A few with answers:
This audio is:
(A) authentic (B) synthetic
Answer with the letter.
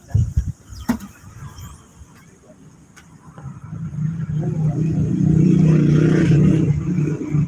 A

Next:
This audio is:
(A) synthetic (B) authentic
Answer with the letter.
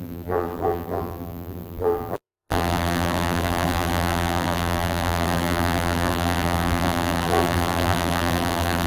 A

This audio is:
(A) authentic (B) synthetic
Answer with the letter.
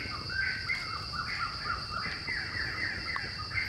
A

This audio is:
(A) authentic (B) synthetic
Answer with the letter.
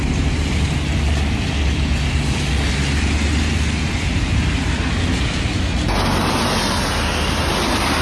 A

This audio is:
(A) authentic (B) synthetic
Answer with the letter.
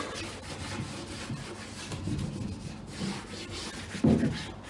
A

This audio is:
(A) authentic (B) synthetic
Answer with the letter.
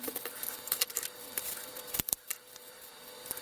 B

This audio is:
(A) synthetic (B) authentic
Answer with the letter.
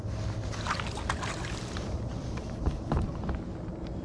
B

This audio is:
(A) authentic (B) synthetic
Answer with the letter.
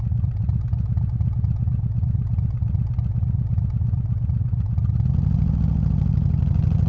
A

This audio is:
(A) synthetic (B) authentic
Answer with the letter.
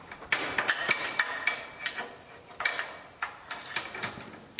B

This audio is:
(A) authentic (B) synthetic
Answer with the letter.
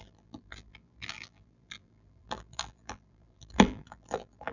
B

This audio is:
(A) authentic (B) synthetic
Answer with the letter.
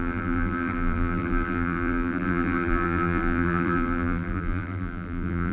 B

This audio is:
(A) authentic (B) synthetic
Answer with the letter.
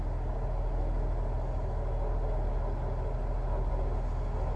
A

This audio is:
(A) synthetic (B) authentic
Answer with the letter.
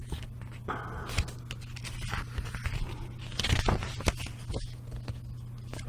B